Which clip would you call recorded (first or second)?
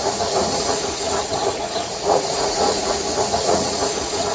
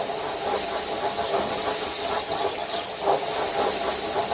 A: second